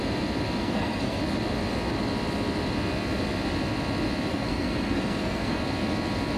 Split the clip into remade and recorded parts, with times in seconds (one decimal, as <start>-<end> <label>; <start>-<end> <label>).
0.0-0.6 recorded; 0.6-1.2 remade; 1.2-4.3 recorded; 4.3-5.6 remade; 5.6-6.4 recorded